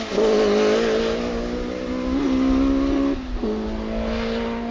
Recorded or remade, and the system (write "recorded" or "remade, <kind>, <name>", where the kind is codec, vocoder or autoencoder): recorded